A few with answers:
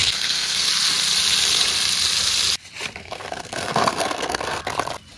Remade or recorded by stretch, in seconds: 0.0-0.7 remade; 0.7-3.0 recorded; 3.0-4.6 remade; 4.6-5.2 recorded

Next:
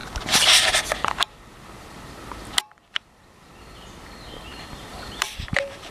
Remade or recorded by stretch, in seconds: 0.0-4.9 recorded; 4.9-5.9 remade

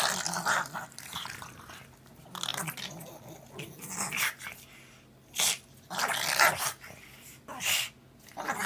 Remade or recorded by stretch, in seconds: 0.0-8.7 recorded